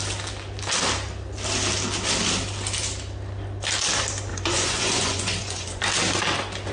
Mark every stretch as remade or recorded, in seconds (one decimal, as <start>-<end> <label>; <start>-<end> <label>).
0.0-4.3 recorded; 4.3-5.8 remade; 5.8-6.7 recorded